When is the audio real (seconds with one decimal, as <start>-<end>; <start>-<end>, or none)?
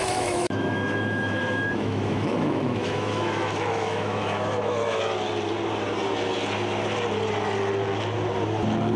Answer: 5.0-9.0